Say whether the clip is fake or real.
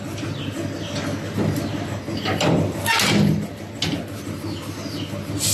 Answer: real